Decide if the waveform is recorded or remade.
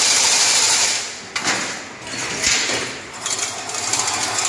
recorded